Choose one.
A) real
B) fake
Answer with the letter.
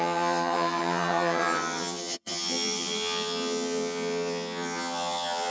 B